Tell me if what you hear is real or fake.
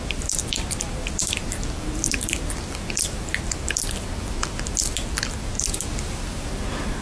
fake